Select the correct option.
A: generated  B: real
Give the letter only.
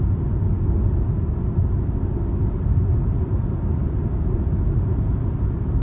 B